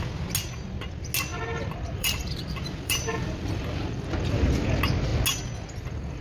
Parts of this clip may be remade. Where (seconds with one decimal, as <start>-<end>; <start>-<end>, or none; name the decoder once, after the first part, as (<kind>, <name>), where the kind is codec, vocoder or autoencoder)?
1.3-4.5 (vocoder, BigVGAN v2)